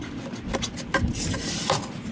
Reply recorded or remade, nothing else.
recorded